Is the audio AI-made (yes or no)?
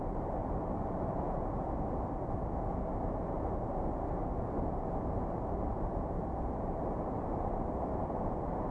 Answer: no